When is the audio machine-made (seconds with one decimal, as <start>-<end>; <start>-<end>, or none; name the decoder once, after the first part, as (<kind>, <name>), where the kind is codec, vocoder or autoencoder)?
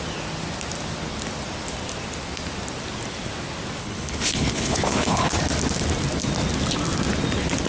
3.8-5.4 (codec, HILCodec)